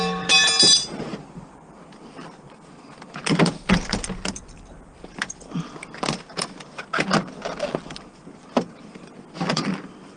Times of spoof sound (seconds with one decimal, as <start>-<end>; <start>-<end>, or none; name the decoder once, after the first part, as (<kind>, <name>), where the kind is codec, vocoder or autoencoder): none